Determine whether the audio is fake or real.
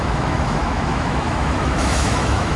fake